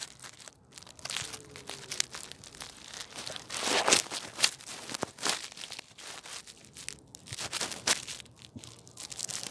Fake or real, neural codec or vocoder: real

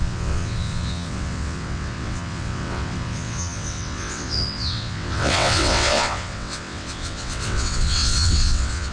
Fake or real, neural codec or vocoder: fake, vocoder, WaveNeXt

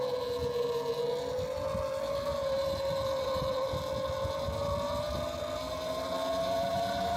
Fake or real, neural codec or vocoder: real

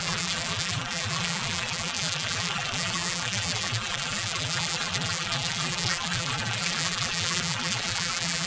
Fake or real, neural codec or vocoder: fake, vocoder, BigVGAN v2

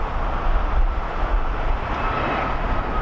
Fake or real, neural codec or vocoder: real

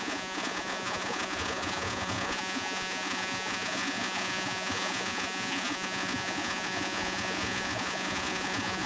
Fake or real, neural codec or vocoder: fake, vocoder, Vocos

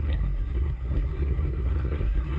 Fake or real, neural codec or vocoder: fake, codec, SNAC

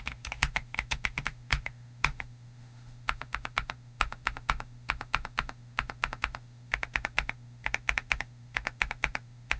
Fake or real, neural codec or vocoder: fake, autoencoder, DAC-VAE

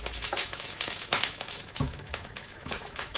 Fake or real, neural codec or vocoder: fake, autoencoder, DAC-VAE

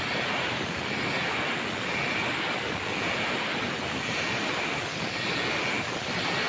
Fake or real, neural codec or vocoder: fake, vocoder, BigVGAN v2